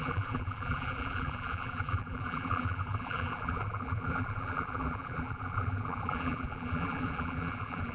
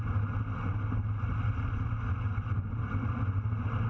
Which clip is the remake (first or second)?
first